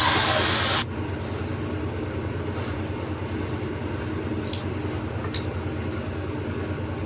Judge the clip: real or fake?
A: real